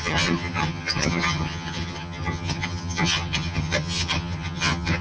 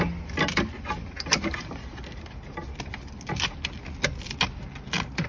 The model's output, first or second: first